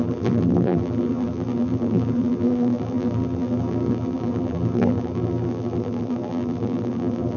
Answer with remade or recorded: remade